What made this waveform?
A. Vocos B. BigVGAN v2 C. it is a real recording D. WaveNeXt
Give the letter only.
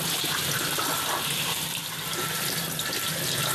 C